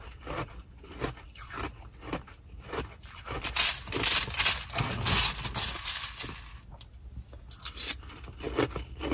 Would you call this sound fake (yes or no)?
no